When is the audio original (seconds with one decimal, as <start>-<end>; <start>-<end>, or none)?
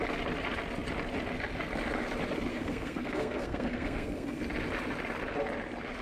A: 0.0-2.5; 4.4-6.0